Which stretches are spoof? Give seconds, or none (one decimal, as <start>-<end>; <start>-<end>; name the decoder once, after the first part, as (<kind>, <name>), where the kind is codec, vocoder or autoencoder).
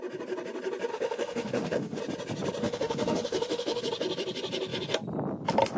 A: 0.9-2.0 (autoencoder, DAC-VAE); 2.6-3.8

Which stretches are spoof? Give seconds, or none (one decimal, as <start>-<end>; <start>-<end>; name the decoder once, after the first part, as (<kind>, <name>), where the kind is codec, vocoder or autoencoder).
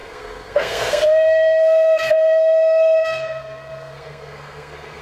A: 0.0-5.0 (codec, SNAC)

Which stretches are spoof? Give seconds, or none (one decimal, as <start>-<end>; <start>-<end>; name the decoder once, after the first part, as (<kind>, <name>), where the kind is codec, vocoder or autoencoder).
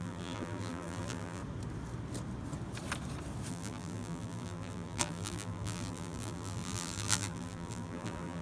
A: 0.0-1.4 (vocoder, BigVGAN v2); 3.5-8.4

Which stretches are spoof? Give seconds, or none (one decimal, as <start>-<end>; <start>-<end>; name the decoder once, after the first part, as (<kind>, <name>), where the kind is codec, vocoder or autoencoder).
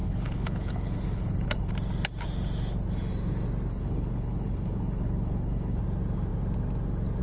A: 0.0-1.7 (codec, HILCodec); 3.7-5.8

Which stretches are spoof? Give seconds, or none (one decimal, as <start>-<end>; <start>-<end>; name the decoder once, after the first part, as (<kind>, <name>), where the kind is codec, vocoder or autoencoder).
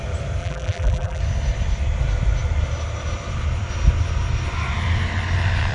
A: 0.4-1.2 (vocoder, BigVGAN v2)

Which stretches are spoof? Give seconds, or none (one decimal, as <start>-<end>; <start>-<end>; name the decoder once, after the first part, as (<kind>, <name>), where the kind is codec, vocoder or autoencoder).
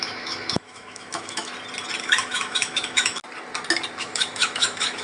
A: 0.0-1.5 (autoencoder, DAC-VAE); 2.0-3.2; 4.0-5.0